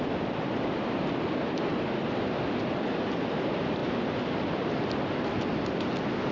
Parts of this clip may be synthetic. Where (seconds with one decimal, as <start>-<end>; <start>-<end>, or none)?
none